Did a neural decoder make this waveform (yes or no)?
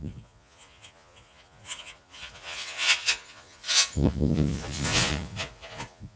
yes